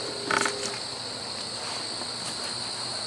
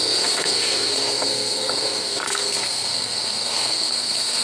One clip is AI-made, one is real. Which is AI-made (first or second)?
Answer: second